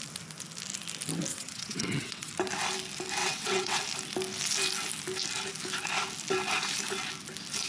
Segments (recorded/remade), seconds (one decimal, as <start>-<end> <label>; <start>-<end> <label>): 0.0-1.3 recorded; 1.3-2.3 remade; 2.3-3.2 recorded; 3.2-3.8 remade; 3.8-7.7 recorded